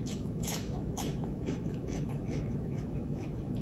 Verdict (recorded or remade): remade